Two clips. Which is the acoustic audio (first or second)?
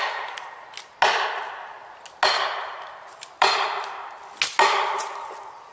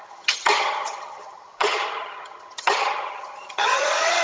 first